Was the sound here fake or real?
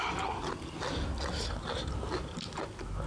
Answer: real